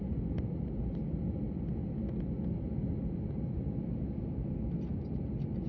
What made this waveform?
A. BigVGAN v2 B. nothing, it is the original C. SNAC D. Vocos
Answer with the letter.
B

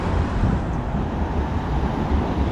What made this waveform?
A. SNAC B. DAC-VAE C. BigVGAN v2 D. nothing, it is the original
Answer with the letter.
C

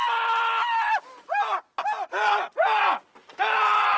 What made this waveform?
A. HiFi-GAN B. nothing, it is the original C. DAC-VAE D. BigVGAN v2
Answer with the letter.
B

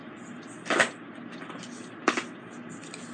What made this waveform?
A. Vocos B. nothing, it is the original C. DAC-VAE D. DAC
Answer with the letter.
B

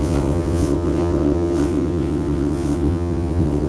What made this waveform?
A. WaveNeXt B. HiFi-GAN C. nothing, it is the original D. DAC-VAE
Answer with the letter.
A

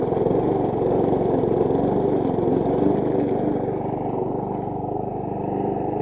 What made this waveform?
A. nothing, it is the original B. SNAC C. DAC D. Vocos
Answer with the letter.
A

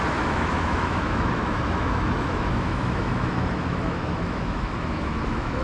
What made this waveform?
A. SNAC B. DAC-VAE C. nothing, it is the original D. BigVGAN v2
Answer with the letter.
B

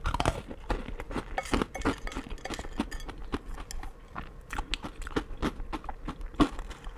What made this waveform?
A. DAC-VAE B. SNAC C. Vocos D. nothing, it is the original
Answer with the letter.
D